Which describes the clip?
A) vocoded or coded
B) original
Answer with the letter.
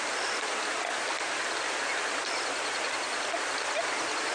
B